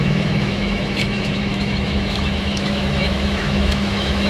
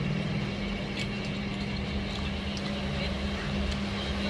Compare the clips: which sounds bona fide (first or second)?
second